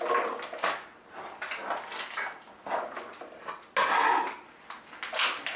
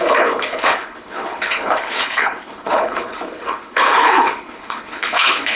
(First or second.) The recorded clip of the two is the first